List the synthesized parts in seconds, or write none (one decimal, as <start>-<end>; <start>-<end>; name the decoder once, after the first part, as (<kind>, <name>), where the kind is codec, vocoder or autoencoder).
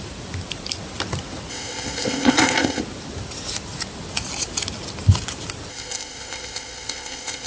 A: 1.5-2.8 (codec, ZipCodec); 5.7-7.5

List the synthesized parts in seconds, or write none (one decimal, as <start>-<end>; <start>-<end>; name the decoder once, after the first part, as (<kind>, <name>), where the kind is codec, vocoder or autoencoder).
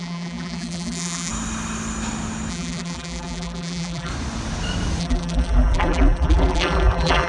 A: 0.0-1.3 (vocoder, BigVGAN v2); 2.5-4.1; 5.0-7.3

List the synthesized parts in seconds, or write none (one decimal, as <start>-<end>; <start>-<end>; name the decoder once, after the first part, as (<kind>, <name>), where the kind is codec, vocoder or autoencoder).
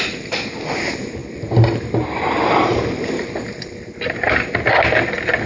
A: 1.2-4.5 (vocoder, BigVGAN v2)